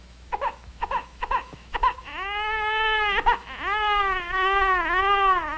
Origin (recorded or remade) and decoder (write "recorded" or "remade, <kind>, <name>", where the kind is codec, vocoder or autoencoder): remade, autoencoder, DAC-VAE